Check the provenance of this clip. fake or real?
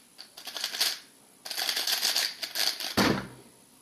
real